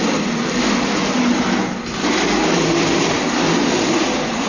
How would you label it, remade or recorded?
recorded